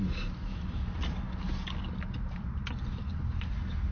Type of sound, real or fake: real